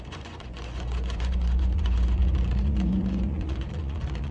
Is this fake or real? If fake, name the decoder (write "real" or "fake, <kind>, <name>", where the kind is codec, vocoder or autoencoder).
fake, vocoder, Vocos